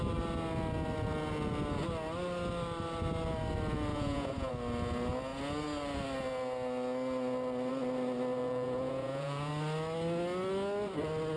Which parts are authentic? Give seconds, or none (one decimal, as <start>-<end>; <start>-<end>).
0.0-3.9; 4.5-8.4; 9.5-11.4